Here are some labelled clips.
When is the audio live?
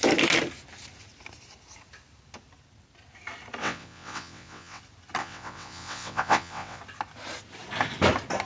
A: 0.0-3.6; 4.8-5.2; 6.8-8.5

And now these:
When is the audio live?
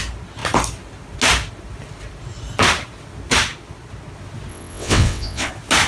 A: 0.0-4.5; 5.5-5.9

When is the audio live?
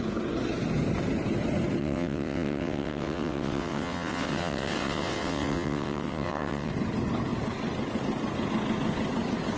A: 0.0-1.8; 6.7-9.6